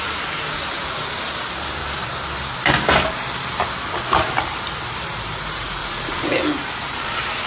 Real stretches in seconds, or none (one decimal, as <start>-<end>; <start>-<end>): 0.0-7.5